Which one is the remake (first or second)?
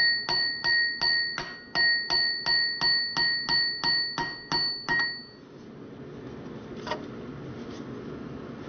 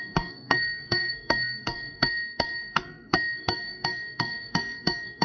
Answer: second